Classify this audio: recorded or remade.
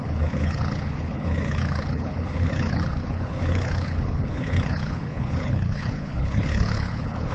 remade